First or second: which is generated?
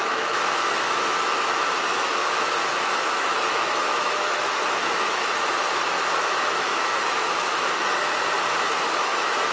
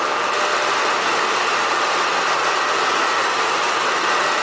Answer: first